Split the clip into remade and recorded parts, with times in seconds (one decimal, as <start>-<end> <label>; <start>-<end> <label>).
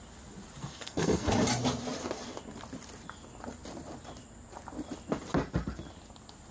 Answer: 0.0-0.6 recorded; 0.6-1.3 remade; 1.3-6.5 recorded